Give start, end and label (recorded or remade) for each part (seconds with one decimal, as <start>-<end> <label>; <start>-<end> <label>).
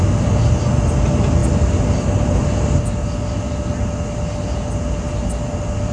0.0-5.9 recorded